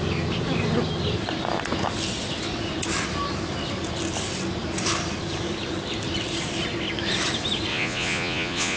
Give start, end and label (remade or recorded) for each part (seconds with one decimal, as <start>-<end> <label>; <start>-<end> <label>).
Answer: 0.0-7.7 recorded; 7.7-8.8 remade